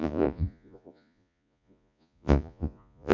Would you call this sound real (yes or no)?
no